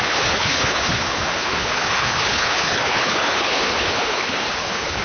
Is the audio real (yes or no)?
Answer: no